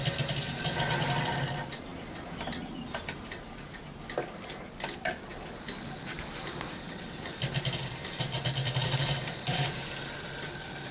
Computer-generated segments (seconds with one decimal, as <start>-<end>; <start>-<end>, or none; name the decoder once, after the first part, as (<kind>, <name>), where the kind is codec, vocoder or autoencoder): none